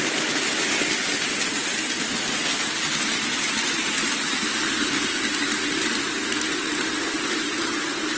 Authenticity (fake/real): real